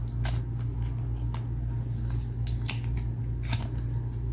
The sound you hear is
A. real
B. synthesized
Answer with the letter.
A